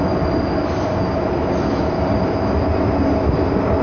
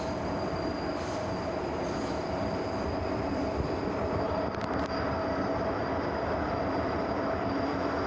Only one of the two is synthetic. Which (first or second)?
second